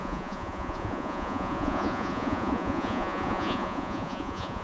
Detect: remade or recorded remade